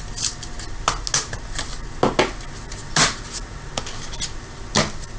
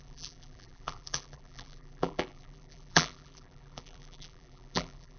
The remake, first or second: second